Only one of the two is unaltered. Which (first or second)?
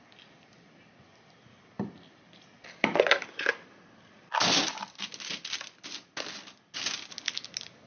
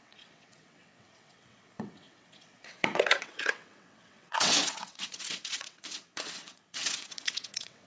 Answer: first